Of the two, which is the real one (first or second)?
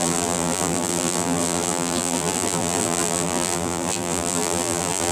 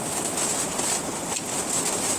second